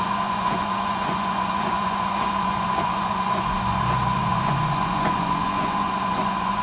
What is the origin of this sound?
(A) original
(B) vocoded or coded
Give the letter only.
B